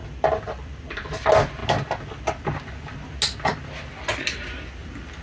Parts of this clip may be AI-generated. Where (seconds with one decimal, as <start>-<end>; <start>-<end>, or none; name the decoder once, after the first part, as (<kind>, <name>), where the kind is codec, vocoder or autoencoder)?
none